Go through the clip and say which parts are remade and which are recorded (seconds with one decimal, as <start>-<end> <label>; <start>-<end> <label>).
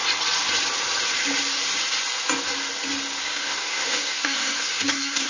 0.0-3.2 recorded; 3.2-5.3 remade